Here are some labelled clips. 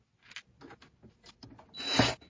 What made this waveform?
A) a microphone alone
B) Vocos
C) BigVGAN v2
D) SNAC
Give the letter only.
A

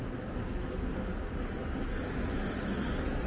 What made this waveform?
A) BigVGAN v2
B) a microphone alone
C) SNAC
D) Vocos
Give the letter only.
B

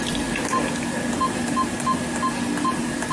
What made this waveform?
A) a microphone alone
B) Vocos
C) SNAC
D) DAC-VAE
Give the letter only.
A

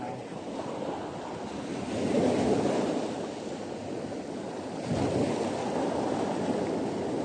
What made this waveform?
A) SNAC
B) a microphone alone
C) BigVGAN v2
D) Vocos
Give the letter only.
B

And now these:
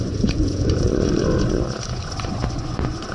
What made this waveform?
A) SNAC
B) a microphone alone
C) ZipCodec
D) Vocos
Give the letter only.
D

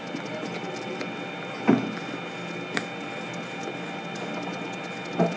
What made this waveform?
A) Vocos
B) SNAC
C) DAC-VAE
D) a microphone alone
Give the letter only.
D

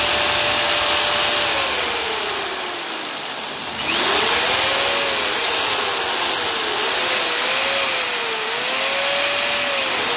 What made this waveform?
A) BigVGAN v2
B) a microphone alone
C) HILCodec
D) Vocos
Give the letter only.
B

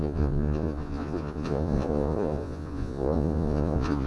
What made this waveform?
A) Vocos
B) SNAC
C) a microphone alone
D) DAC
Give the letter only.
A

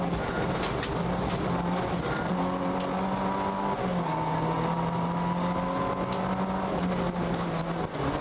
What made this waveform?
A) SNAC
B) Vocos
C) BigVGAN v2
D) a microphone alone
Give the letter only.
D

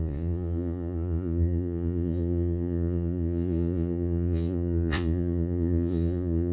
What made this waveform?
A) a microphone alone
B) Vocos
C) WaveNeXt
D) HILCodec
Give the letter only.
B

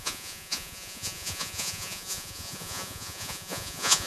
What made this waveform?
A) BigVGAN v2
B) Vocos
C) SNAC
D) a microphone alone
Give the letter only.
B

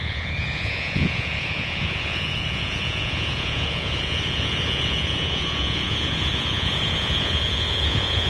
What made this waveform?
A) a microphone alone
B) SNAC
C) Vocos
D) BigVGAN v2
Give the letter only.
C